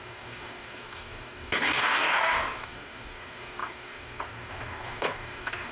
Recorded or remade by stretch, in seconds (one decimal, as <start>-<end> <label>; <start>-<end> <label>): 0.0-5.7 remade